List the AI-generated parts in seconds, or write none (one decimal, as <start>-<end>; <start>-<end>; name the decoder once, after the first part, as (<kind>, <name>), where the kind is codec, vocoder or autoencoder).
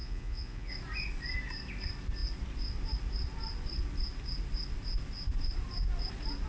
0.0-0.7 (vocoder, Vocos)